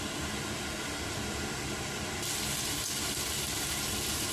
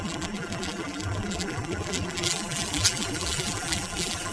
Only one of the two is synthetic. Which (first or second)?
second